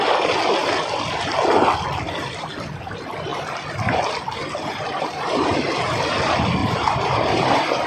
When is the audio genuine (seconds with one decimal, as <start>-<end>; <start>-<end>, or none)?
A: 0.0-4.4; 6.1-6.6